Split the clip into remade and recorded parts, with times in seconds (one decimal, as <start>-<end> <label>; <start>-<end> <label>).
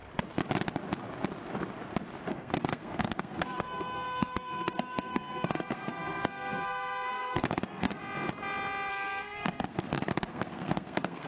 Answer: 0.0-2.3 recorded; 2.3-8.0 remade; 8.0-8.9 recorded; 8.9-11.3 remade